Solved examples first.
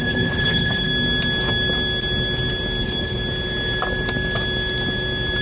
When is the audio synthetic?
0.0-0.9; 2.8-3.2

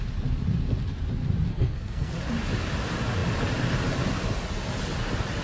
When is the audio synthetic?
1.5-2.1

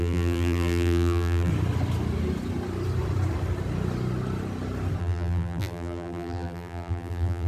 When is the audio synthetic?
0.0-1.5; 5.0-7.5

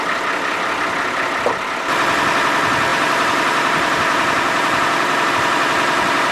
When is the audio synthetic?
2.9-5.3